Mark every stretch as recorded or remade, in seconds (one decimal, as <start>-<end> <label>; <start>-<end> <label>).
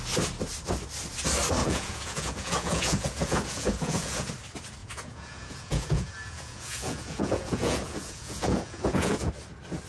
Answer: 0.0-1.6 recorded; 1.6-4.3 remade; 4.3-4.8 recorded; 4.8-9.3 remade; 9.3-9.9 recorded